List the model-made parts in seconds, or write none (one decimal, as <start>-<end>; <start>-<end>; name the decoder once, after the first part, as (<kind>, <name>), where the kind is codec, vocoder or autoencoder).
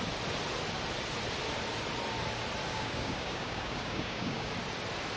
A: 2.7-4.5 (codec, DAC)